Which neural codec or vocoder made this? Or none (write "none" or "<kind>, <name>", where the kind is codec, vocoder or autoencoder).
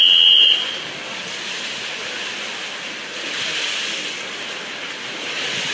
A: none